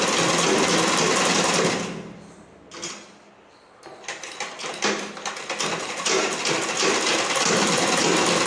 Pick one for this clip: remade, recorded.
recorded